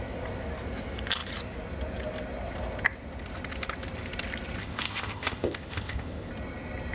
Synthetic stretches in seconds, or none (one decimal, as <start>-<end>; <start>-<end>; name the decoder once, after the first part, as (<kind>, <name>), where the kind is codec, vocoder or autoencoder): 4.6-6.3 (codec, ZipCodec)